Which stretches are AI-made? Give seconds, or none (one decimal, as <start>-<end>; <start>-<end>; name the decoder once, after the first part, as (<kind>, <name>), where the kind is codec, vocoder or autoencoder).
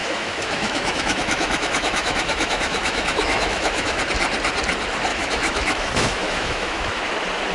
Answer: 0.0-4.0 (autoencoder, DAC-VAE); 5.1-7.0